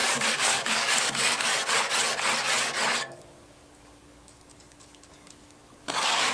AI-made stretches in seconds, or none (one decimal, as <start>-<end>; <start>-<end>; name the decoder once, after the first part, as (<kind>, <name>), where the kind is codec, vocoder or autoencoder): 0.0-1.5 (codec, DAC); 3.0-6.3

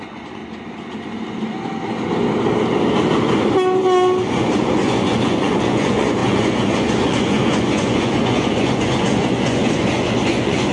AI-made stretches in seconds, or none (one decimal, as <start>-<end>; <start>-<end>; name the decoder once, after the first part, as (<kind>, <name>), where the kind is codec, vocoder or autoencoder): 0.0-0.4 (vocoder, Vocos); 4.2-10.7

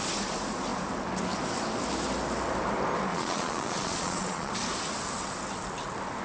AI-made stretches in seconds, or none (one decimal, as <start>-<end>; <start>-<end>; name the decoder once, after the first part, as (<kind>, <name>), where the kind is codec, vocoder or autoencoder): 3.1-4.5 (vocoder, Vocos)

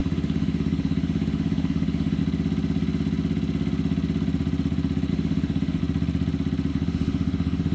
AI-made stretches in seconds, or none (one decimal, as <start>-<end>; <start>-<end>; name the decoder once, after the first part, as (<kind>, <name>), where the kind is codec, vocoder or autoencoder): 0.0-2.2 (autoencoder, DAC-VAE); 5.1-5.8; 6.7-7.7